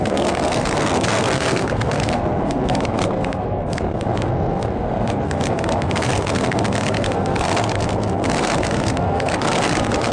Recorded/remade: remade